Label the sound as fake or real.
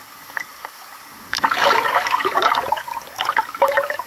fake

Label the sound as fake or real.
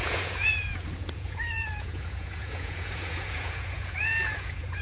fake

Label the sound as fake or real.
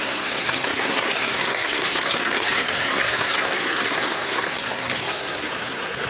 fake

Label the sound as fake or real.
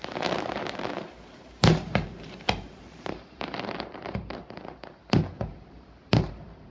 fake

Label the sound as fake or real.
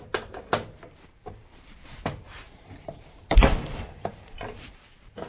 fake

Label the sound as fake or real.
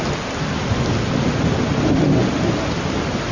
real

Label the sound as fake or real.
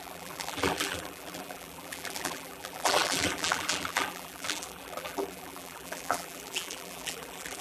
fake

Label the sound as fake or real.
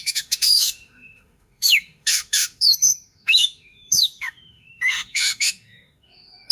fake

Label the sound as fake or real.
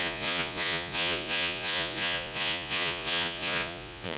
fake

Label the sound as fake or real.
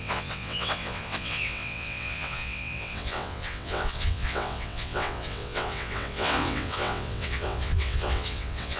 fake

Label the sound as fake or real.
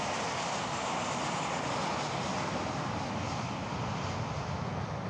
real